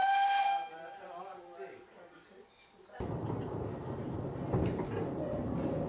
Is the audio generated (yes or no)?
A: no